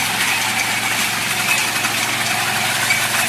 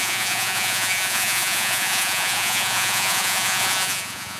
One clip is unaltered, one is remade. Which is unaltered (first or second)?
first